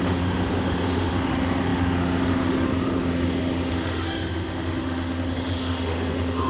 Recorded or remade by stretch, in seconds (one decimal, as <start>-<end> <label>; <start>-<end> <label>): 0.0-6.5 remade